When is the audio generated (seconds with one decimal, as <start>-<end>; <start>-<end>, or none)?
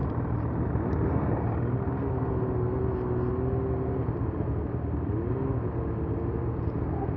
none